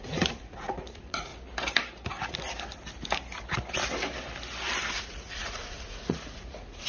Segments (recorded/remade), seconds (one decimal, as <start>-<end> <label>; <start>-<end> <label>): 0.0-1.3 remade; 1.3-4.9 recorded; 4.9-6.9 remade

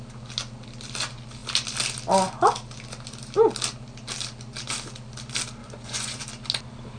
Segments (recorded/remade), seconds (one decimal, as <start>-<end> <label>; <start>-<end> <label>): 0.0-5.6 recorded; 5.6-6.2 remade; 6.2-7.0 recorded

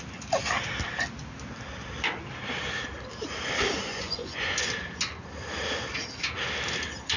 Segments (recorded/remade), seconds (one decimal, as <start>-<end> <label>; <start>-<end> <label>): 0.0-3.9 recorded; 3.9-4.7 remade; 4.7-7.2 recorded

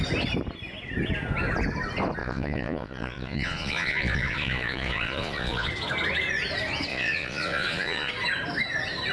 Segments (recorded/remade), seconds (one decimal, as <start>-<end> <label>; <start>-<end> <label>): 0.0-2.2 recorded; 2.2-5.7 remade; 5.7-6.9 recorded; 6.9-8.1 remade; 8.1-9.1 recorded

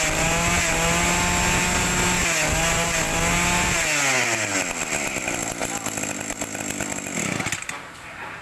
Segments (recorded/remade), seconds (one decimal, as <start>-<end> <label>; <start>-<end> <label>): 0.0-8.4 recorded

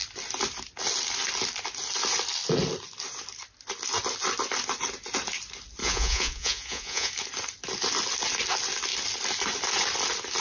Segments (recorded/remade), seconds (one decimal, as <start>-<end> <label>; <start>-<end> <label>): 0.0-5.8 recorded; 5.8-7.1 remade; 7.1-10.4 recorded

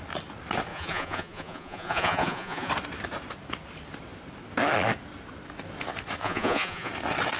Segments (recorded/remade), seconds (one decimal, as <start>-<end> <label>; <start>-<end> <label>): 0.0-0.7 recorded; 0.7-2.7 remade; 2.7-6.2 recorded; 6.2-6.9 remade; 6.9-7.4 recorded

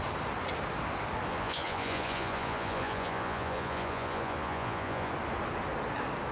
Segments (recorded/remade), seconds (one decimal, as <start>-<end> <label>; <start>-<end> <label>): 0.0-1.3 recorded; 1.3-5.1 remade; 5.1-6.3 recorded